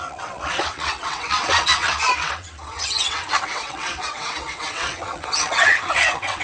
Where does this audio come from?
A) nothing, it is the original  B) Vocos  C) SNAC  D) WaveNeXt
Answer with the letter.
D